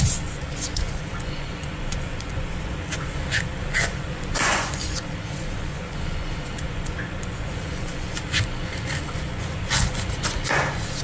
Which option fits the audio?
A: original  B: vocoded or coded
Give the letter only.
B